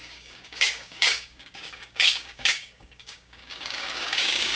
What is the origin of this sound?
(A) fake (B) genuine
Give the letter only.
A